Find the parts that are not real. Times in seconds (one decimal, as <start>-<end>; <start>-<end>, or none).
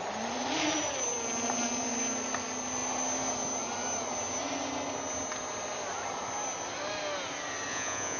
7.7-8.2